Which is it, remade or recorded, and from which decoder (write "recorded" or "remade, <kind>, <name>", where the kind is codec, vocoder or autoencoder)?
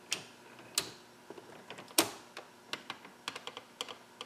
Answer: recorded